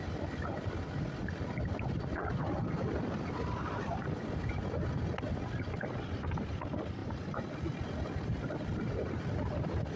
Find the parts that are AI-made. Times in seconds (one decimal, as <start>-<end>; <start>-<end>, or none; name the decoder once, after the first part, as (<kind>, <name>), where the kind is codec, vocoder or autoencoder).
none